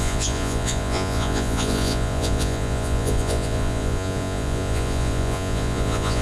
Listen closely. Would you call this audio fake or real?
fake